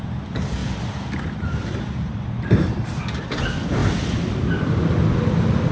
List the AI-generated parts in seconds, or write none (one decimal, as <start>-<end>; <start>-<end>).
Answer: 0.0-0.6; 1.2-3.8; 5.2-5.7